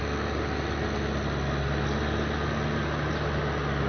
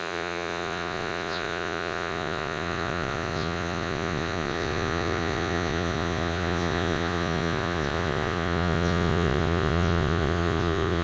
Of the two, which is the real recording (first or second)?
first